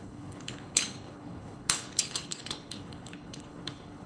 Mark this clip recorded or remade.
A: remade